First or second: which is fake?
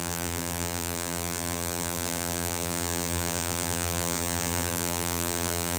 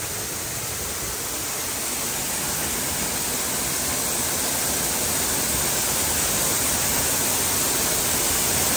first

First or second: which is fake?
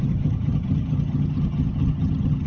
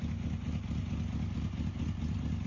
first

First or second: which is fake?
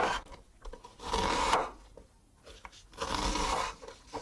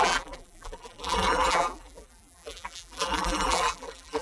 second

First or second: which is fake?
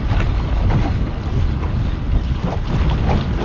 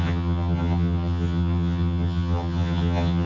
second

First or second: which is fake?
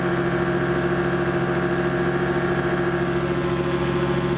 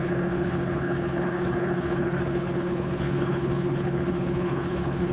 second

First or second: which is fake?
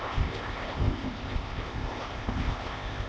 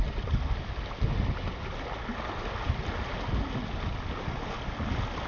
first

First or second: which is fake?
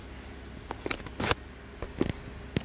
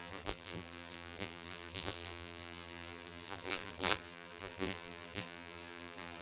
second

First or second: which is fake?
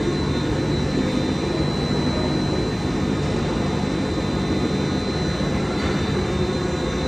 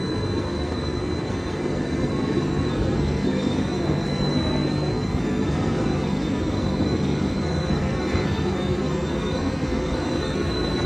second